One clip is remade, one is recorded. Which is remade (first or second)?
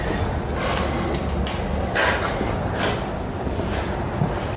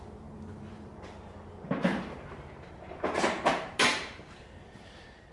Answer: second